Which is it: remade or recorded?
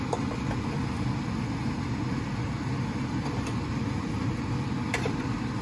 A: recorded